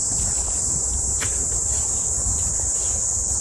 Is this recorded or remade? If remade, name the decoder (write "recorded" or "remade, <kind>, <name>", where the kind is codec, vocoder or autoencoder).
recorded